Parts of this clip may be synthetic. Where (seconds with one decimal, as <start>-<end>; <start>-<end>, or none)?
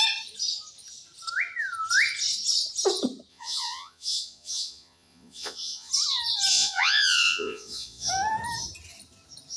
3.3-5.9; 6.5-8.1